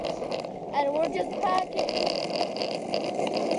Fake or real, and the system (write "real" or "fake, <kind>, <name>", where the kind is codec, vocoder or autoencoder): real